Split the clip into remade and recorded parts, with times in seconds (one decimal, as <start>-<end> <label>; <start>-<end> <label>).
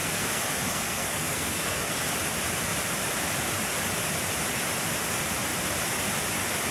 0.0-2.0 remade; 2.0-6.7 recorded